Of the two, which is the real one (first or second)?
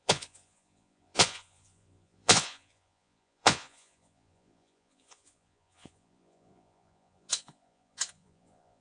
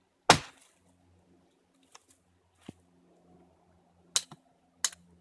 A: second